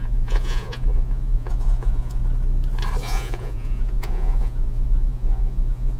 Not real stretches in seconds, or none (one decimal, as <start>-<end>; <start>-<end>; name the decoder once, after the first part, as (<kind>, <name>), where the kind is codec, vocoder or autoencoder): 0.0-2.2 (vocoder, Vocos); 3.0-6.0